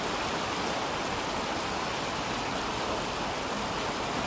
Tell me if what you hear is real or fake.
real